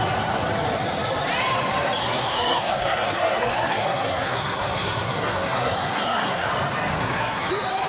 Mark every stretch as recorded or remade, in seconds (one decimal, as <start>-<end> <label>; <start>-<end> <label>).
0.0-2.0 recorded; 2.0-6.5 remade; 6.5-6.9 recorded; 6.9-7.5 remade; 7.5-7.9 recorded